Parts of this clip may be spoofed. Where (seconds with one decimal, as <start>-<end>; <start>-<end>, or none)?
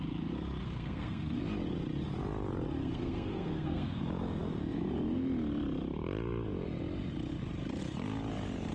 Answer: 0.6-1.4; 2.8-4.0